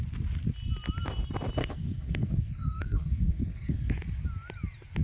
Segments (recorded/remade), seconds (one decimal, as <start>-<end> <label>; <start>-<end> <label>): 0.0-1.6 recorded; 1.6-3.9 remade; 3.9-5.0 recorded